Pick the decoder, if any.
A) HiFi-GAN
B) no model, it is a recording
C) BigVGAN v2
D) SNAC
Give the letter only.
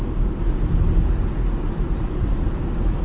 B